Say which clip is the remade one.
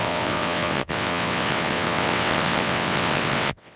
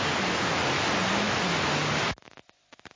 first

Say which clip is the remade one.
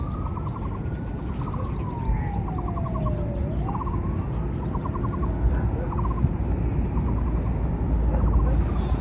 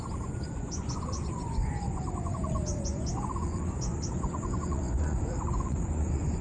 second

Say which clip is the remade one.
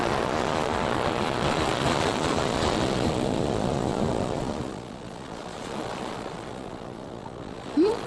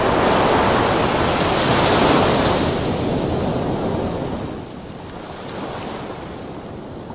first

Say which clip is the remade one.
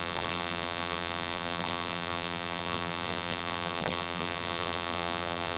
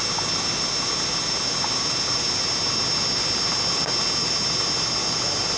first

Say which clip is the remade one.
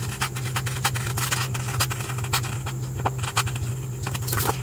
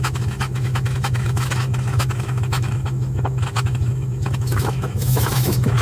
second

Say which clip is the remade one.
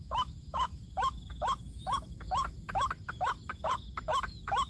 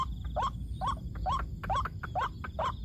first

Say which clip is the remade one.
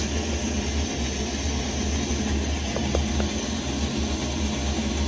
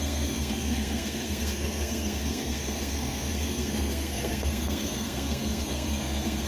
second